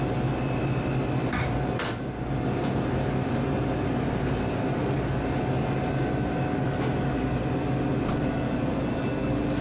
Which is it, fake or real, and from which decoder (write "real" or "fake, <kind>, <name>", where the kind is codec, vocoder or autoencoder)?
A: real